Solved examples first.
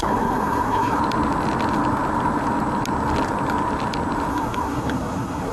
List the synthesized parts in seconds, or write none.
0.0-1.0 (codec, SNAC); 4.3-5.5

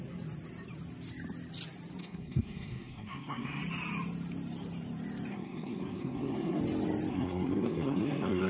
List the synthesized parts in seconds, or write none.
2.0-3.6 (codec, SNAC); 5.3-6.6; 7.1-8.5